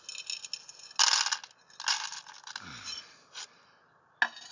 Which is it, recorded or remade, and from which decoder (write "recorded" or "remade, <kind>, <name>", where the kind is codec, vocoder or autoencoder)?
recorded